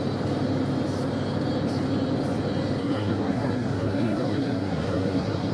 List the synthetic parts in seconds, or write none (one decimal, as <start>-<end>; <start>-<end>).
2.8-5.5